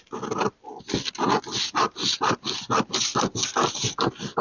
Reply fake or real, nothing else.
real